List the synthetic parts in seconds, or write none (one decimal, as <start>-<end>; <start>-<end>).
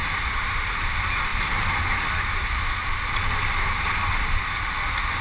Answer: none